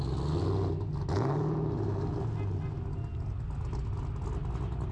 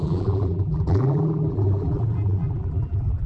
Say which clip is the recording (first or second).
first